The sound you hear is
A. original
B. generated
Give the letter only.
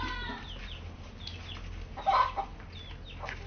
A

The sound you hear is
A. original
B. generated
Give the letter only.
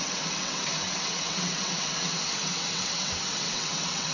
B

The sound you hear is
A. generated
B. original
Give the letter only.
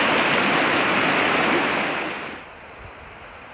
B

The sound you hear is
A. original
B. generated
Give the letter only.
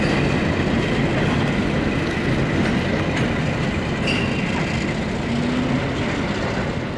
A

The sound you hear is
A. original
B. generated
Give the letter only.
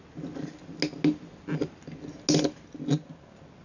A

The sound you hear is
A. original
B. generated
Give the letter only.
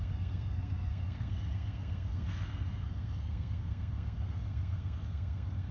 B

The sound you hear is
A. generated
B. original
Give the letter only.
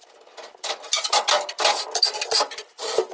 B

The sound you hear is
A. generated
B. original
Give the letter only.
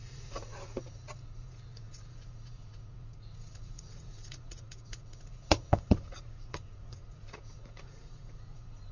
A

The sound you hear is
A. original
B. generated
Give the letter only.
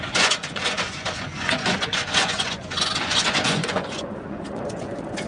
B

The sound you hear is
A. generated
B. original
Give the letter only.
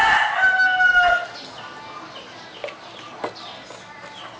B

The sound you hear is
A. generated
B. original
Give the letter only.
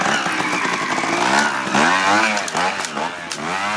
B